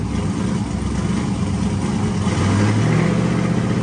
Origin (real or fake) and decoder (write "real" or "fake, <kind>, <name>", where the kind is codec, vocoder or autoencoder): real